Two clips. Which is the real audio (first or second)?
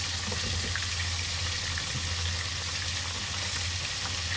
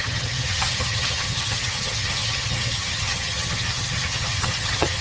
first